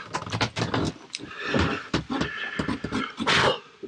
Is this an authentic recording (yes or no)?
yes